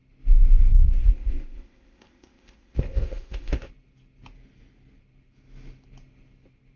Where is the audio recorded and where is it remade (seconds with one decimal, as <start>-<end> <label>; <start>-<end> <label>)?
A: 0.0-1.0 recorded; 1.0-3.7 remade; 3.7-6.8 recorded